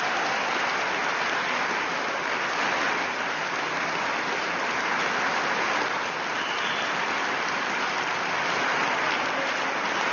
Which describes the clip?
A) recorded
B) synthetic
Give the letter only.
A